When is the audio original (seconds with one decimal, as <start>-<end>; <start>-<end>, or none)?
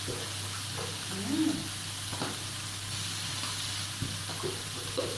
0.0-5.2